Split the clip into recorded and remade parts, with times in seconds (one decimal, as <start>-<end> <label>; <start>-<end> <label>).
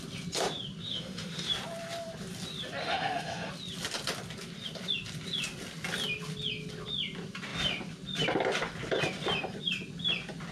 0.0-0.8 recorded; 0.8-1.5 remade; 1.5-2.8 recorded; 2.8-3.5 remade; 3.5-10.5 recorded